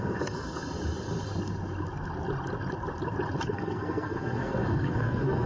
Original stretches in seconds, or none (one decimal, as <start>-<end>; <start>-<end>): 0.6-3.5

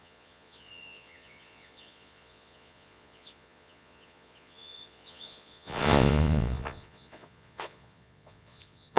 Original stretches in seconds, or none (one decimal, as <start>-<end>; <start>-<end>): none